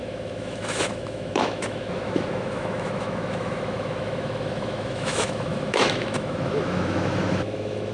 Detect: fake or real fake